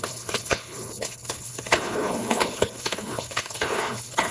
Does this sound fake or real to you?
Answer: fake